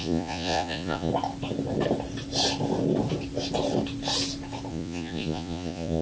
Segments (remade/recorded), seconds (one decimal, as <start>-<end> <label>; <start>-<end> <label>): 0.0-1.1 remade; 1.1-4.7 recorded; 4.7-6.0 remade